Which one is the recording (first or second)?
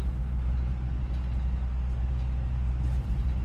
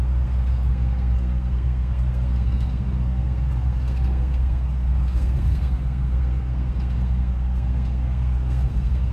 first